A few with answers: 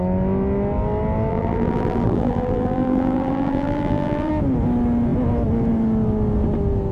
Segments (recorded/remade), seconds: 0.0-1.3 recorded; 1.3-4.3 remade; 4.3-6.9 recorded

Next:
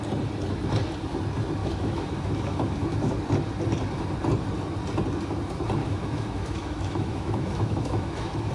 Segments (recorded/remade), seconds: 0.0-1.6 recorded; 1.6-3.2 remade; 3.2-5.8 recorded; 5.8-8.5 remade

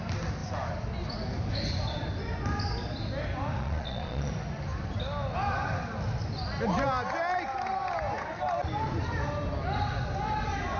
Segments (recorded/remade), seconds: 0.0-3.6 recorded; 3.6-4.3 remade; 4.3-10.8 recorded

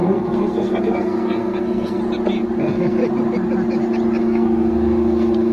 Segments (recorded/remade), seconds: 0.0-2.0 remade; 2.0-2.6 recorded; 2.6-3.0 remade; 3.0-4.2 recorded; 4.2-5.5 remade